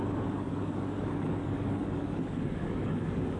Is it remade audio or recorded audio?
remade